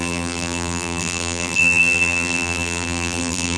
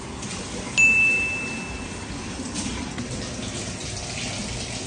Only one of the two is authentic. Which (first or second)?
second